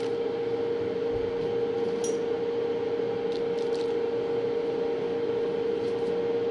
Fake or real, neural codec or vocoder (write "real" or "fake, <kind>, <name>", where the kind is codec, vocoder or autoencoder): real